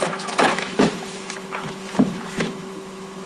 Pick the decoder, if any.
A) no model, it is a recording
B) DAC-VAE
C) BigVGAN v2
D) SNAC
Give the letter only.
B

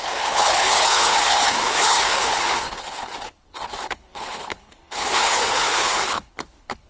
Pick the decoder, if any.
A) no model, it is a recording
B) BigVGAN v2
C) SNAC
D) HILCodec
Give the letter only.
D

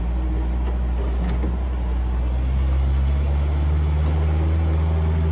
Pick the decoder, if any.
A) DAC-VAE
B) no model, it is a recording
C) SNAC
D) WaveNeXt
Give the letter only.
B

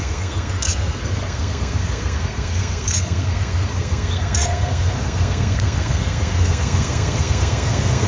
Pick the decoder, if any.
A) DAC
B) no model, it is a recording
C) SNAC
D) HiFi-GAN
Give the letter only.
C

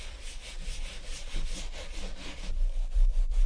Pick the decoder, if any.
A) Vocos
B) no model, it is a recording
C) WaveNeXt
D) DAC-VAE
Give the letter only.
B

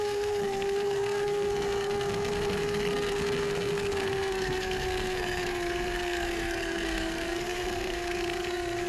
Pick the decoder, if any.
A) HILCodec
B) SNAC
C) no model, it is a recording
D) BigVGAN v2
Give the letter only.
B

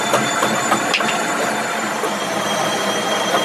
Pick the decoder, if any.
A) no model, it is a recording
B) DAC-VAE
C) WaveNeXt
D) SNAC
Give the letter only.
A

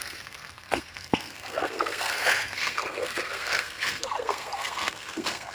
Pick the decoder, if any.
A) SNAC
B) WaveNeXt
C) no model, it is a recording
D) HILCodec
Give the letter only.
A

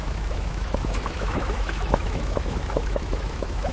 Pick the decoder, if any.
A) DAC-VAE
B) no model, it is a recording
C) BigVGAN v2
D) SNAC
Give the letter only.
A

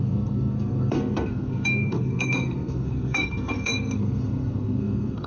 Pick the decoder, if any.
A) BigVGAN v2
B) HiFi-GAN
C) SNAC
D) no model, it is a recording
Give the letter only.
C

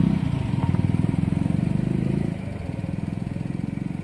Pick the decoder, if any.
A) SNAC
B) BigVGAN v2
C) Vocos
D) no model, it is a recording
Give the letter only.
B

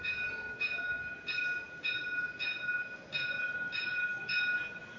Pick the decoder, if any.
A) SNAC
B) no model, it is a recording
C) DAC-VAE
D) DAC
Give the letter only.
B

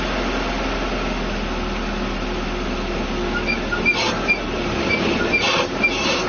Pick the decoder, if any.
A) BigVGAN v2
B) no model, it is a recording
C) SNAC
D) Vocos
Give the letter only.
B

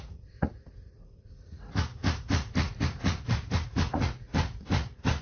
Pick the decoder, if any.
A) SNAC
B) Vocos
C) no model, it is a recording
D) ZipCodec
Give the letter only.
B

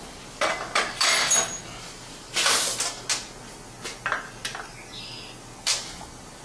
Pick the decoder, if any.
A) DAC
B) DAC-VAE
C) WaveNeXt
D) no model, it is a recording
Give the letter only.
D